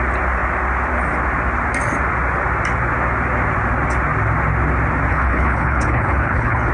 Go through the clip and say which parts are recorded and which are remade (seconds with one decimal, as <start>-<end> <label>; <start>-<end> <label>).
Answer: 0.0-5.1 recorded; 5.1-6.7 remade